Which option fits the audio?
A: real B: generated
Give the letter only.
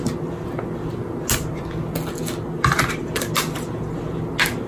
A